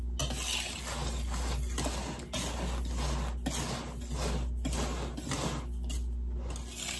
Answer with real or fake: real